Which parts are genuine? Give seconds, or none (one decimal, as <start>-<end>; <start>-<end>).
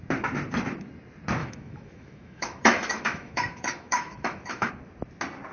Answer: 0.0-1.4; 4.7-5.5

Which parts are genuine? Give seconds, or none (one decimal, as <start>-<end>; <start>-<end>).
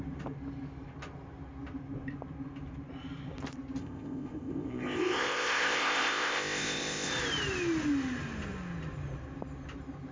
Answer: 0.0-3.8; 7.1-10.1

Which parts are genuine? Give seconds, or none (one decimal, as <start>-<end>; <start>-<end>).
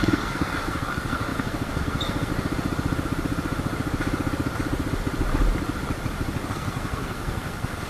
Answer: 2.3-6.5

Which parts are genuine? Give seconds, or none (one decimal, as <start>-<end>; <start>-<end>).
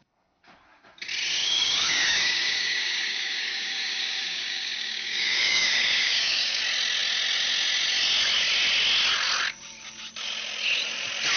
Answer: 0.0-1.4; 6.6-11.4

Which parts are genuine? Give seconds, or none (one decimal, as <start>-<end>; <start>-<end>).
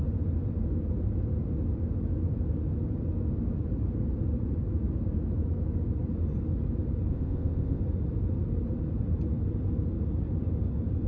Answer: 0.0-7.1; 7.8-11.1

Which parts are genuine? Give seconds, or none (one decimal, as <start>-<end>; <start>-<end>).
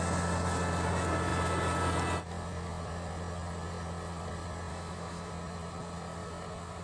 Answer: 0.0-4.7; 5.3-6.8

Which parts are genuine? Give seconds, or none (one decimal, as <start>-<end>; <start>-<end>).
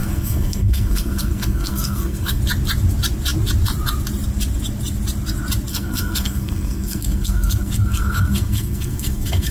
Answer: 2.4-5.7